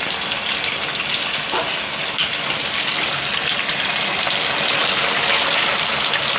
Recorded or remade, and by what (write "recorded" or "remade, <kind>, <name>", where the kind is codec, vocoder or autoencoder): recorded